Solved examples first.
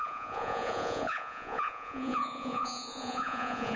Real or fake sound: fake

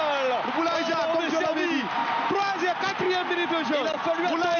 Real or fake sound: real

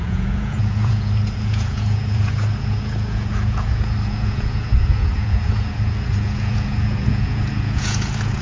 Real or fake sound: fake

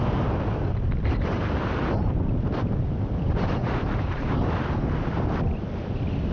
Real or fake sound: real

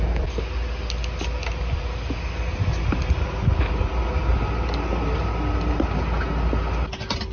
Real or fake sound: real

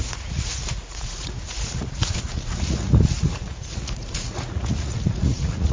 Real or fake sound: fake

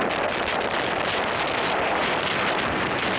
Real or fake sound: real